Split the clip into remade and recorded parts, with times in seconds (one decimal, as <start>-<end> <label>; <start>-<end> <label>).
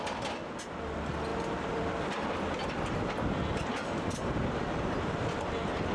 0.0-1.3 recorded; 1.3-2.3 remade; 2.3-5.9 recorded